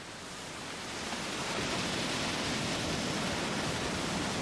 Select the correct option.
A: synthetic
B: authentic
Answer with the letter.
B